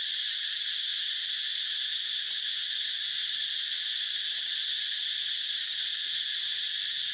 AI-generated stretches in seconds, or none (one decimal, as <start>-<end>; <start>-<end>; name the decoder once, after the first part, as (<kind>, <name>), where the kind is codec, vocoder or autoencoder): 0.0-7.1 (vocoder, BigVGAN v2)